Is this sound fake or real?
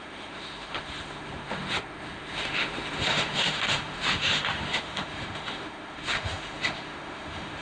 fake